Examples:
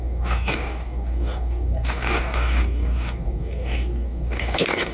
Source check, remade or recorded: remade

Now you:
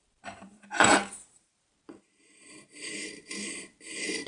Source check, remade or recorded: remade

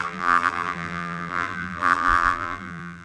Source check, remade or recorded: remade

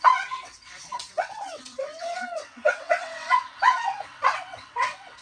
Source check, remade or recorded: remade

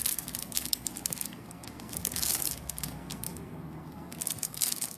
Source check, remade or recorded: remade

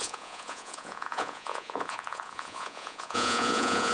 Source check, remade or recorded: remade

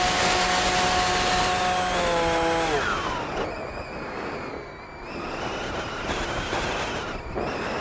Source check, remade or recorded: recorded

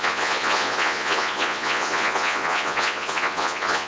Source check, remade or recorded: remade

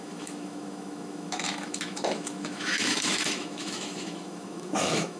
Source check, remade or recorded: remade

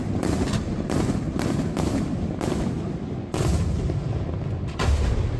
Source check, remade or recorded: recorded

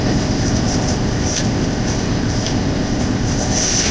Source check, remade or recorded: remade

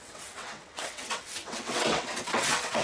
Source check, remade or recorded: remade